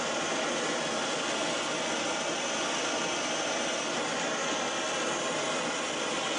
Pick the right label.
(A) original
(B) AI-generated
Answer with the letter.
A